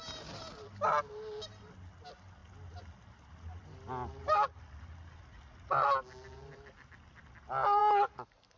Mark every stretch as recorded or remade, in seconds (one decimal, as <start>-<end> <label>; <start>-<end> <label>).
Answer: 0.0-8.6 recorded